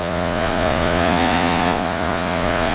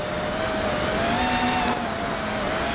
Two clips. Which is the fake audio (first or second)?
first